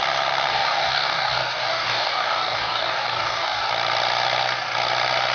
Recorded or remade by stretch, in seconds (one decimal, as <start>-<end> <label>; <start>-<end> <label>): 0.0-0.5 recorded; 0.5-3.7 remade; 3.7-5.3 recorded